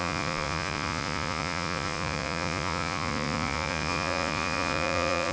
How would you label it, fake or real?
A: fake